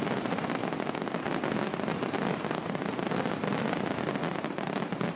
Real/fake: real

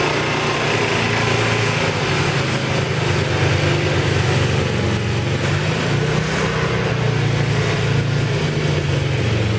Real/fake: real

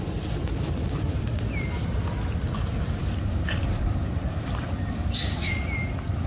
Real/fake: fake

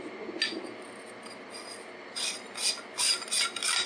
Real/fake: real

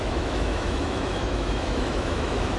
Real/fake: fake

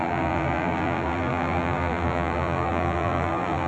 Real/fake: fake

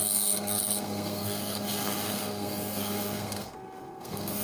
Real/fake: fake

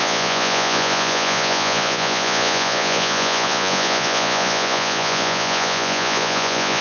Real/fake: fake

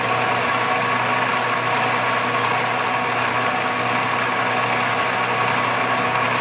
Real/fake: real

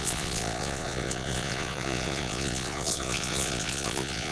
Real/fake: fake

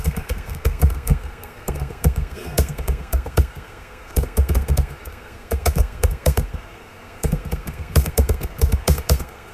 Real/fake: fake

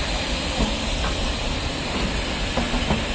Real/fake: fake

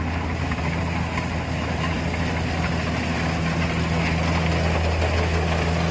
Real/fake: real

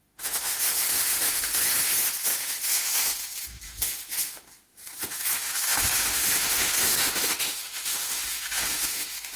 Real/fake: fake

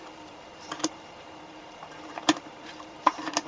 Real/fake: fake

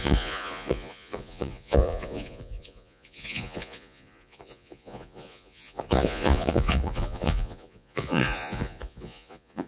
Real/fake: fake